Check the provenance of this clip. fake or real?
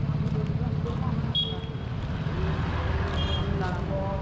real